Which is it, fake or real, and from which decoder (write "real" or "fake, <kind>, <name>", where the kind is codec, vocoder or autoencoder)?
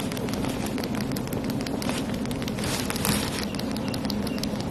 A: real